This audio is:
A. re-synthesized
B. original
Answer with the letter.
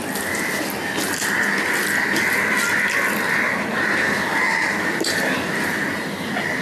B